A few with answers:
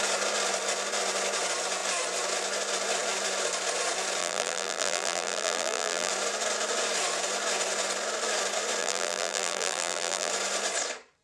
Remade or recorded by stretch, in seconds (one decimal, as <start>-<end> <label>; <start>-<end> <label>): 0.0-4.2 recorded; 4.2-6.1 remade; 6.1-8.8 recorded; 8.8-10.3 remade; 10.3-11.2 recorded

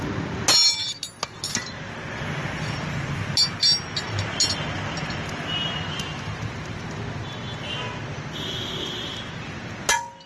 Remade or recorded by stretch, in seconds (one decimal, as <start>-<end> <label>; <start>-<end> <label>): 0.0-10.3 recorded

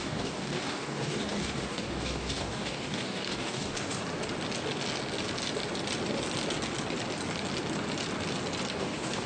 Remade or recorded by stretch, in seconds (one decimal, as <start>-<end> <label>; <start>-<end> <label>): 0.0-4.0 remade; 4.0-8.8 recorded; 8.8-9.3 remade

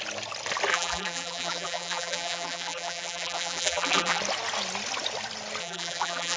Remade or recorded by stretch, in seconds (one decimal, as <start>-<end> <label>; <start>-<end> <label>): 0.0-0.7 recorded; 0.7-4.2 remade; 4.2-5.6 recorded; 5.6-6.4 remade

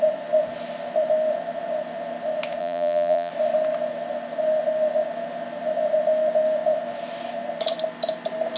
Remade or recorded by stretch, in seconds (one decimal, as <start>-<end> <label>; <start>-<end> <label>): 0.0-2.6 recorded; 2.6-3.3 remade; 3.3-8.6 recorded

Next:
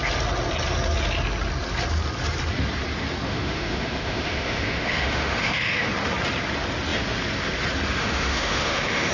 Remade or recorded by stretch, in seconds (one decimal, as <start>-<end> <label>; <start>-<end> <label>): 0.0-3.3 recorded; 3.3-5.9 remade; 5.9-8.0 recorded; 8.0-9.1 remade

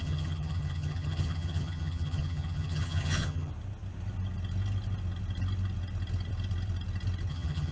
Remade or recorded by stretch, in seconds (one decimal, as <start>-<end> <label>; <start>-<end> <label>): 0.0-3.5 remade; 3.5-7.3 recorded; 7.3-7.7 remade